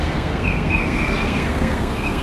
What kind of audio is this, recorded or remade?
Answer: remade